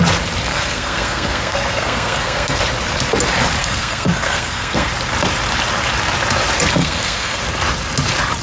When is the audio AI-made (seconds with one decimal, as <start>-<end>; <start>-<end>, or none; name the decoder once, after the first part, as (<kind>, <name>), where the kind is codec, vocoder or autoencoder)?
0.5-2.6 (codec, SNAC); 3.6-4.9; 6.8-7.4

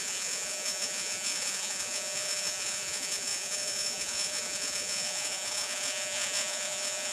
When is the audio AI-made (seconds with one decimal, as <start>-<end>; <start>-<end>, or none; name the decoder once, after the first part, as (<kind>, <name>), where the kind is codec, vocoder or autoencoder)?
0.0-7.1 (vocoder, Vocos)

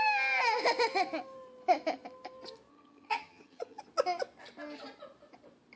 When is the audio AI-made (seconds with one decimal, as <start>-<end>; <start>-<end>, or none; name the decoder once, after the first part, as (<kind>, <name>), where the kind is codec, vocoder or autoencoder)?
2.7-3.8 (vocoder, HiFi-GAN)

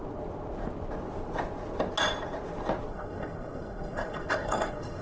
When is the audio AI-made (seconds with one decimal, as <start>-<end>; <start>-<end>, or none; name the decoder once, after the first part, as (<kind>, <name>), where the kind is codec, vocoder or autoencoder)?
2.9-5.0 (codec, SNAC)

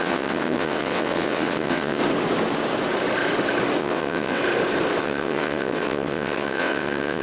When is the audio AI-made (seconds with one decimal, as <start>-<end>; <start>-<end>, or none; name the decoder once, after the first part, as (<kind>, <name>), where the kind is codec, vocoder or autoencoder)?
0.0-2.0 (vocoder, WaveNeXt); 3.8-4.4; 5.0-7.2

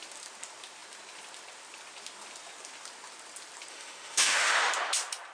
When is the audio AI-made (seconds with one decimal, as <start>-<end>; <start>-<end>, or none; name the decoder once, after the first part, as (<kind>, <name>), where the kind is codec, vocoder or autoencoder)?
3.7-4.7 (autoencoder, DAC-VAE)